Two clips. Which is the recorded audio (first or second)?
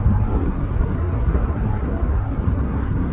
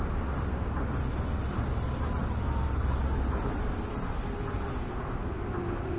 second